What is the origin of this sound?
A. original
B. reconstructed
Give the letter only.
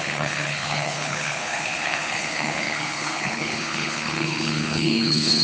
B